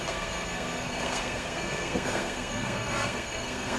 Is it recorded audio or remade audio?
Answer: remade